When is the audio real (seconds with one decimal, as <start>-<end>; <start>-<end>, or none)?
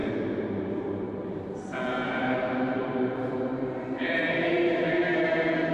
0.0-0.7